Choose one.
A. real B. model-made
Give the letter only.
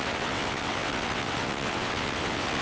B